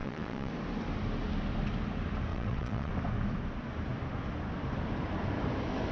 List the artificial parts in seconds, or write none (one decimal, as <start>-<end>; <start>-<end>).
0.0-0.5; 2.3-2.9